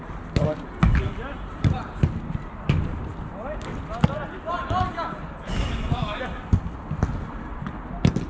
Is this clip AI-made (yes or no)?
no